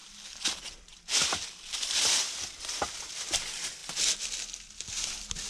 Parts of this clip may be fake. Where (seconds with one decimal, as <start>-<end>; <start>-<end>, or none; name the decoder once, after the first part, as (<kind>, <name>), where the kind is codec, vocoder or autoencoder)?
none